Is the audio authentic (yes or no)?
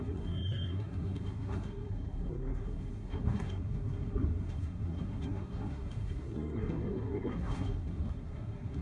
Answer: no